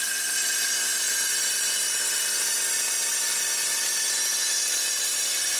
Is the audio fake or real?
real